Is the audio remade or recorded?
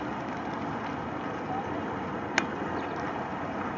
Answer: recorded